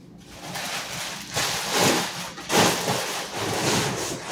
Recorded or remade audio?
recorded